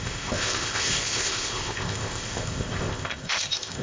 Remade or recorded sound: remade